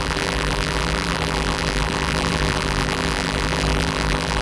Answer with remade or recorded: remade